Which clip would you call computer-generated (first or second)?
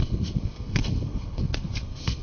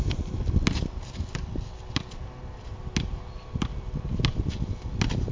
first